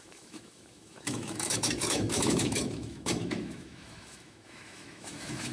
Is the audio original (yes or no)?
no